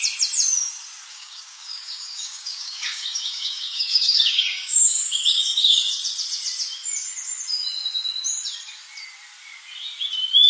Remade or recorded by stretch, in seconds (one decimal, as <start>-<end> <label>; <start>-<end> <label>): 0.0-1.1 recorded; 1.1-6.0 remade; 6.0-10.5 recorded